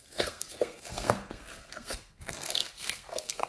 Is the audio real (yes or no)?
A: no